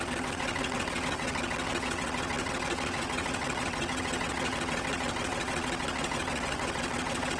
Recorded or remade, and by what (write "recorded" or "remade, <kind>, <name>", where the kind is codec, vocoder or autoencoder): remade, vocoder, WaveNeXt